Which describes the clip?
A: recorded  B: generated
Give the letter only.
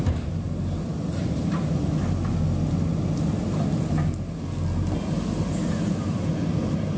A